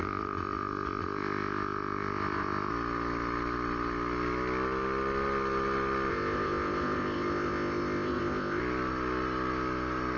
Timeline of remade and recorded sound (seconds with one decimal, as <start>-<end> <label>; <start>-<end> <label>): 0.0-2.7 remade; 2.7-6.1 recorded; 6.1-8.6 remade; 8.6-10.2 recorded